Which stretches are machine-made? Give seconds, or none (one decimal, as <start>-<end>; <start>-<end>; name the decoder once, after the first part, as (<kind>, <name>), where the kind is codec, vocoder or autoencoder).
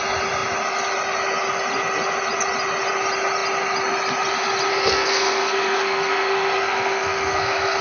4.7-7.8 (codec, SNAC)